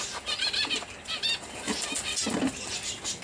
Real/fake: real